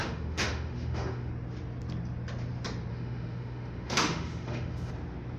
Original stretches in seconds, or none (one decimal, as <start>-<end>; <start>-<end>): 1.3-2.9; 4.9-5.4